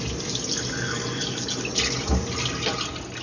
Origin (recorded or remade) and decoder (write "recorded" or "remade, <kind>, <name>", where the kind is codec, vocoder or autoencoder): recorded